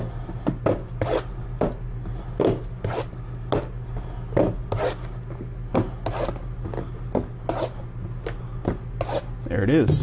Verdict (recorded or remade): recorded